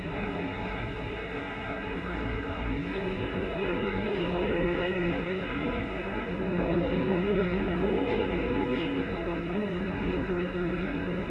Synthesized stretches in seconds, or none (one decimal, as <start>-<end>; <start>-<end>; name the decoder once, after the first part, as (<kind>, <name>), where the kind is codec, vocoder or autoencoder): 0.0-11.3 (codec, SNAC)